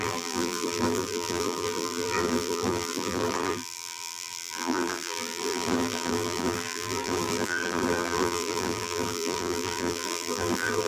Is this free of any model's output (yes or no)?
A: no